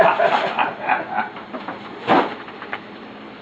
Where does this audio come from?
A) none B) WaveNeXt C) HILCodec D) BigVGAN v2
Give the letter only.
D